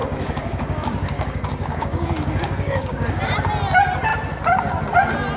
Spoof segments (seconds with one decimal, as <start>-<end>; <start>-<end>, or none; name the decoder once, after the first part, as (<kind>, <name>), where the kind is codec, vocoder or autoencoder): 0.0-3.2 (codec, DAC)